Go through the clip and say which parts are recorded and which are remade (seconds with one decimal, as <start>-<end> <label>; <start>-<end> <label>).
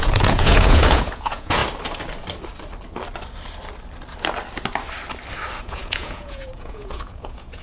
0.0-1.6 remade; 1.6-5.6 recorded; 5.6-7.6 remade